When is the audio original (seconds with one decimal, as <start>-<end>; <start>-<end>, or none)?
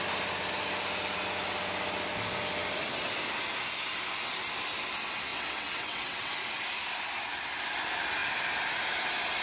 0.0-5.3; 6.3-9.4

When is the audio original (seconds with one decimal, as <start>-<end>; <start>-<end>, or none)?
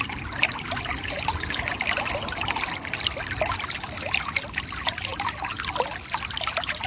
0.0-6.9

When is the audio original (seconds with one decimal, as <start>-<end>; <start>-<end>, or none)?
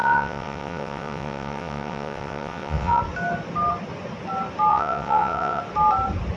3.0-4.7; 5.6-6.4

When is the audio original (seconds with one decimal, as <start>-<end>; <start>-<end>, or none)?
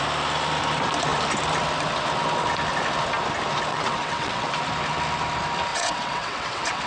0.0-3.7; 4.5-5.7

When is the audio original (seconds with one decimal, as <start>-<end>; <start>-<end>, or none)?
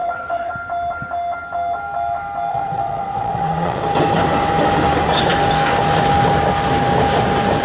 0.5-2.5; 3.8-7.6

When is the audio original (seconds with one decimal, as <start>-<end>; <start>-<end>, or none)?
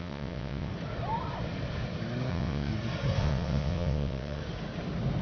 0.7-2.3; 2.7-3.2; 4.4-5.2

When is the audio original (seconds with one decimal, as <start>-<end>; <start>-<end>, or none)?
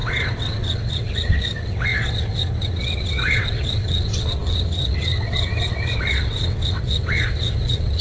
none